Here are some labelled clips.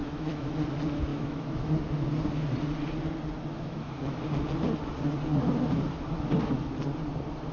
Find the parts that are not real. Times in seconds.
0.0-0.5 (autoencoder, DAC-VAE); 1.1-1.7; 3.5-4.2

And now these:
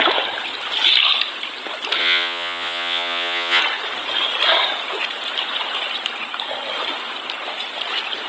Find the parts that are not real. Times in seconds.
2.0-3.6 (vocoder, Vocos)

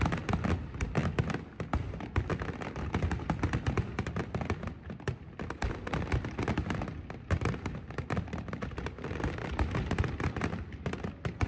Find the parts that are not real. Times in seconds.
none

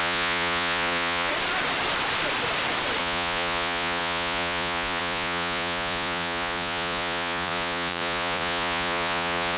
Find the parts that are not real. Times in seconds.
0.0-1.3 (vocoder, Vocos); 3.0-9.6

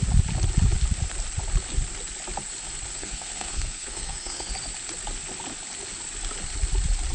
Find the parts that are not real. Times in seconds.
2.9-4.5 (codec, SNAC)

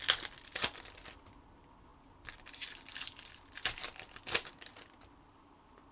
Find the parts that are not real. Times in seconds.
none